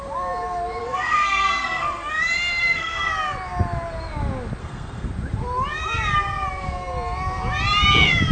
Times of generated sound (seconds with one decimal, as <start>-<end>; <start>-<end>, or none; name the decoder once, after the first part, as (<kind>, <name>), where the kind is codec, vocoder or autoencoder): 0.8-2.1 (codec, SNAC); 2.6-3.1; 4.6-5.1